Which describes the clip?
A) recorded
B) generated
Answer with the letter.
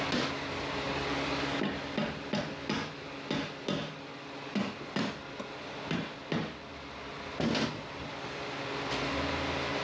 A